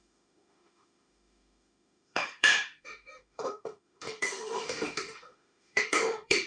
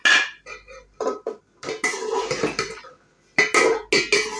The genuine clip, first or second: second